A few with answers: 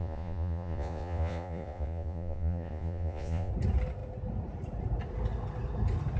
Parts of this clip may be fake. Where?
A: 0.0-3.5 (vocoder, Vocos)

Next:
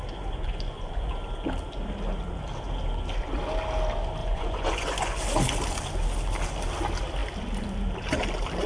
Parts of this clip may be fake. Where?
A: 0.4-1.1 (vocoder, Vocos); 4.2-5.2